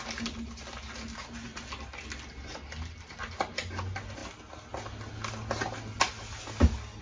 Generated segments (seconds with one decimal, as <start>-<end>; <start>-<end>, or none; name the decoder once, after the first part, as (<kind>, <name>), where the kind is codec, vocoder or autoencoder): none

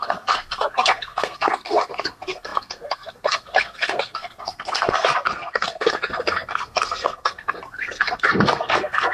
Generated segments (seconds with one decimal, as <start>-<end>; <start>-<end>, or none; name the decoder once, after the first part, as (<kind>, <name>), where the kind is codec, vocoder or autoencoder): 0.0-9.1 (codec, SNAC)

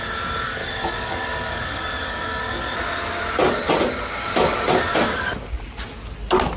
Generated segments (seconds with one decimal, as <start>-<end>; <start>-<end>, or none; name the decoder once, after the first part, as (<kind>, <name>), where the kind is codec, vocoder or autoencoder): 0.6-2.4 (codec, DAC)

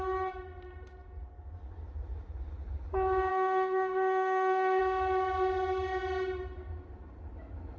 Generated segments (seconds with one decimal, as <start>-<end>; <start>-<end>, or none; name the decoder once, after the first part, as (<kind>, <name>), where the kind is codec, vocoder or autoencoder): 3.3-4.8 (autoencoder, DAC-VAE)

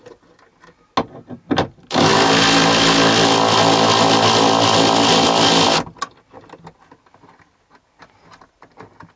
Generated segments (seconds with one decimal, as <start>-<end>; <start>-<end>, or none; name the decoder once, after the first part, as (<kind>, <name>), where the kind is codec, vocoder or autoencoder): none

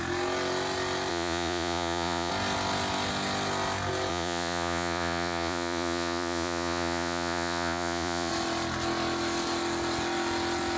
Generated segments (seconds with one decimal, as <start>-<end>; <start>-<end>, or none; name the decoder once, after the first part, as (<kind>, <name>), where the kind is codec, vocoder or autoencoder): 1.1-2.3 (vocoder, Vocos); 4.1-8.3